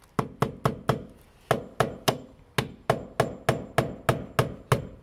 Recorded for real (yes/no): yes